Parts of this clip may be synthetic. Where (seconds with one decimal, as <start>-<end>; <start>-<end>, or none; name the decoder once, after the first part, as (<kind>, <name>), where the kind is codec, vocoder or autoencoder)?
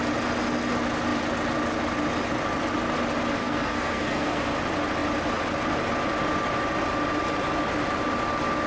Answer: 3.4-4.5 (codec, SNAC)